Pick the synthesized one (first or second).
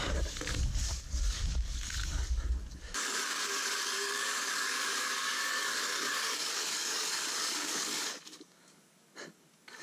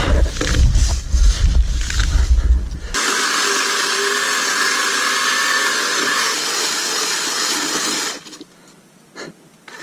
first